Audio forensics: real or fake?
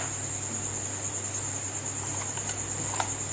real